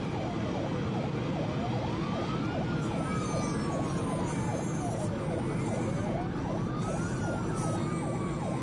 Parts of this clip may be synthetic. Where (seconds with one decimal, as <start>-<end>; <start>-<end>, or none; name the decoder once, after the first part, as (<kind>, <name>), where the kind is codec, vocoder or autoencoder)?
none